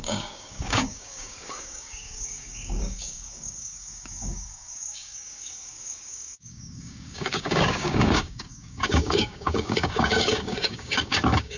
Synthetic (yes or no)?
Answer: yes